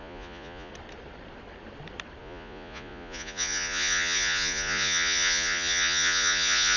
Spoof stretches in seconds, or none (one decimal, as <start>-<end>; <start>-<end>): 0.0-0.7; 2.2-6.8